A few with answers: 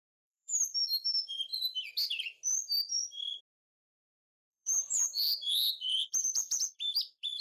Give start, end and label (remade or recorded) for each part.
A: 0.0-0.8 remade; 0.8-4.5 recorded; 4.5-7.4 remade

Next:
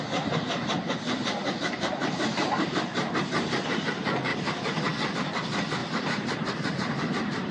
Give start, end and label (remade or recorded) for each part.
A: 0.0-2.9 remade; 2.9-3.7 recorded; 3.7-4.3 remade; 4.3-5.1 recorded; 5.1-7.5 remade